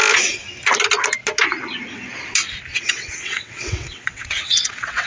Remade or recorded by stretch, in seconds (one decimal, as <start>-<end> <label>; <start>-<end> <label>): 0.0-2.7 recorded; 2.7-5.1 remade